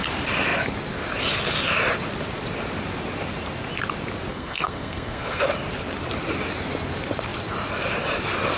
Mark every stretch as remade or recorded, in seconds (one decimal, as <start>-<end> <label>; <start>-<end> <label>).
0.0-4.3 recorded; 4.3-5.4 remade; 5.4-8.6 recorded